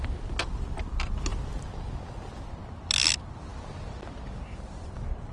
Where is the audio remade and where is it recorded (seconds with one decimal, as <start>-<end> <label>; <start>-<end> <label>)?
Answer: 0.0-1.3 remade; 1.3-2.6 recorded; 2.6-5.3 remade